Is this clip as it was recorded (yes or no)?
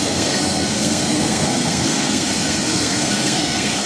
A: no